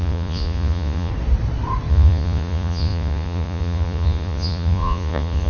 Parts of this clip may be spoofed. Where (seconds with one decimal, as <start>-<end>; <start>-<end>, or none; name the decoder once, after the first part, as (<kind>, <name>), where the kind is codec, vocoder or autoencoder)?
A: 0.0-1.1 (vocoder, Vocos); 1.9-5.5